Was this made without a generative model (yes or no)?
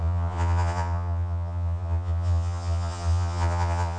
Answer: no